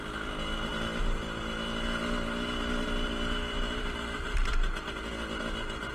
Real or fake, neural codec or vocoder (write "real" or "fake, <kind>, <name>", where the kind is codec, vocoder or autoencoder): real